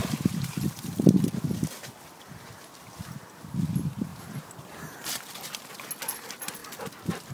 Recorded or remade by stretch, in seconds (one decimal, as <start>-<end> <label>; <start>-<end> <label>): 0.0-4.1 recorded; 4.1-5.1 remade; 5.1-7.3 recorded